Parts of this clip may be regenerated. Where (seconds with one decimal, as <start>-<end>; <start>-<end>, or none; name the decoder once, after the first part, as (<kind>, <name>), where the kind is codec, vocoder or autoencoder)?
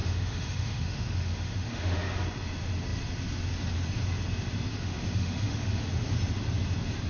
0.0-2.2 (autoencoder, DAC-VAE); 4.7-5.8